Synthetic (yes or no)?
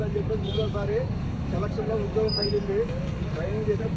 yes